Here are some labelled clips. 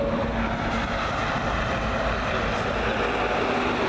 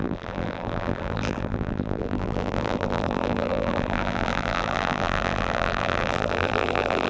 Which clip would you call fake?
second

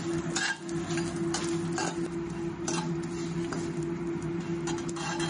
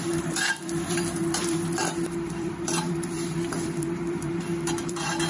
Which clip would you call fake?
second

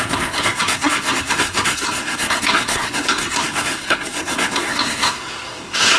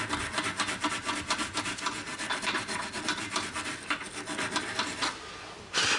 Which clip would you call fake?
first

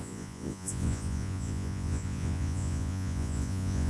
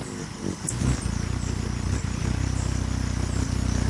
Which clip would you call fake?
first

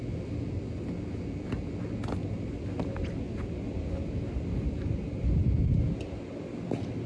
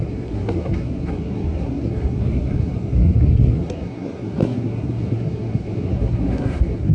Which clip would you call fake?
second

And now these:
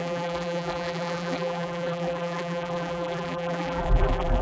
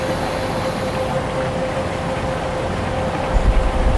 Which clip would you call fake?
first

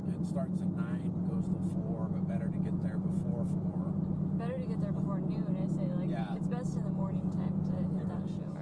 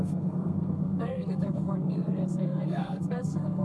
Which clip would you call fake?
second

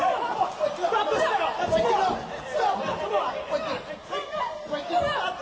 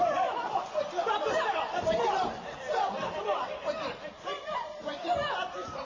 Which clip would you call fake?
second